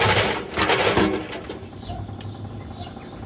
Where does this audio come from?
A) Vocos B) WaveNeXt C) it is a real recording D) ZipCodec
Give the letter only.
C